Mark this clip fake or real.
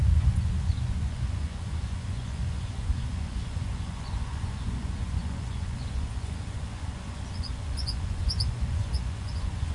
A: fake